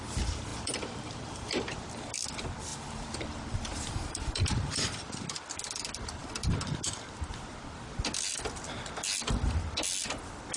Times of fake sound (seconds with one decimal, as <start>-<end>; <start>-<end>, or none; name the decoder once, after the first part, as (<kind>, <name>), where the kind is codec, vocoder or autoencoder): 0.5-1.9 (vocoder, BigVGAN v2); 2.7-4.8